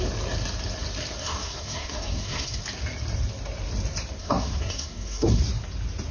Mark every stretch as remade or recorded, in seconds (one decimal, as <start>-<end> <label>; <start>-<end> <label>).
0.0-1.2 recorded; 1.2-2.6 remade; 2.6-4.2 recorded; 4.2-5.4 remade; 5.4-6.1 recorded